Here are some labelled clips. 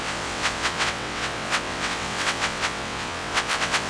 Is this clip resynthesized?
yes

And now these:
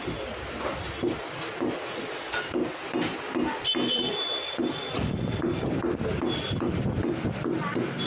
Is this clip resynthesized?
no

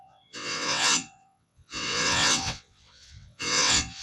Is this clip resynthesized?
yes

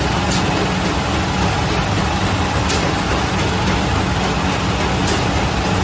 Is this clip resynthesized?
no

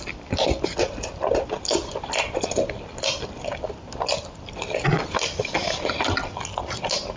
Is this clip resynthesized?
no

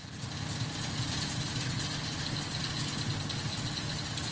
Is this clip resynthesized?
no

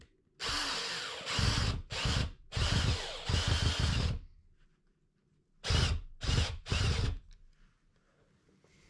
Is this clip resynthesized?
no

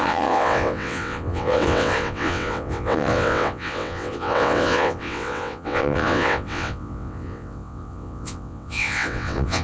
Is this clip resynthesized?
yes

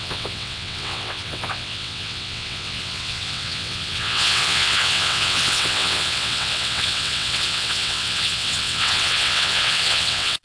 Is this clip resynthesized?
yes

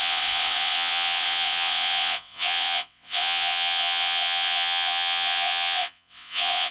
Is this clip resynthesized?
yes